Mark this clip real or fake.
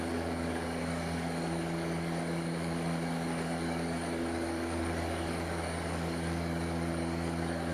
fake